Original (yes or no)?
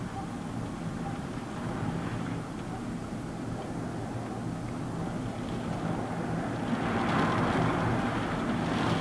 yes